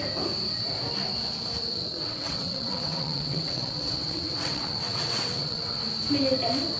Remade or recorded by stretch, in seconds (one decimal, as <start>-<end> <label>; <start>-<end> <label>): 0.0-1.7 recorded; 1.7-5.8 remade; 5.8-6.8 recorded